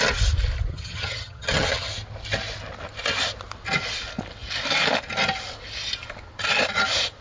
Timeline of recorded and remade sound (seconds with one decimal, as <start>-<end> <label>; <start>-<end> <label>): 0.0-0.7 recorded; 0.7-1.9 remade; 1.9-7.2 recorded